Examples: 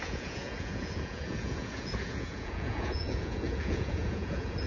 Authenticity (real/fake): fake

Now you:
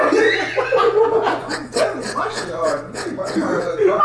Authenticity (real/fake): fake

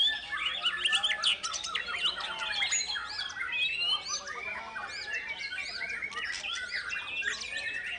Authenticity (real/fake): real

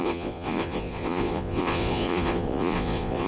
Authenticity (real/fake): fake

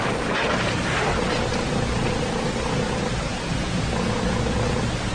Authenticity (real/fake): real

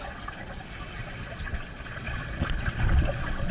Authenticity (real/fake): fake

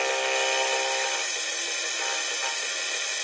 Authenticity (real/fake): real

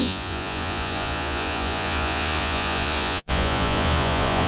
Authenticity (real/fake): fake